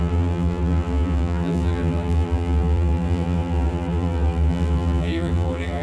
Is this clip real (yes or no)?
no